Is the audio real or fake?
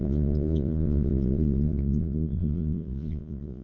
fake